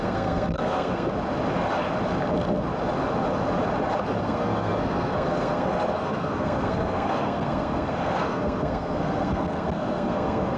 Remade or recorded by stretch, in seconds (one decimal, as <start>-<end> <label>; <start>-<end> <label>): 0.0-1.1 remade; 1.1-4.2 recorded; 4.2-10.6 remade